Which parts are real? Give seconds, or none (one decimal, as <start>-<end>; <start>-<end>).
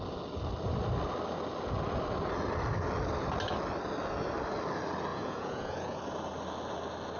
0.0-5.1; 6.0-7.2